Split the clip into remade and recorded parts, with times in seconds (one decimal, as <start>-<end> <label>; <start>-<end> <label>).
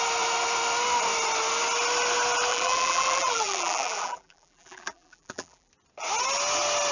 0.0-2.5 recorded; 2.5-5.7 remade; 5.7-6.9 recorded